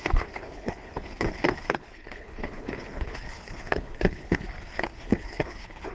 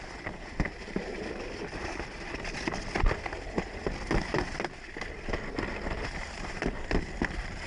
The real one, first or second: second